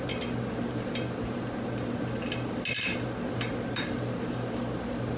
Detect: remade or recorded recorded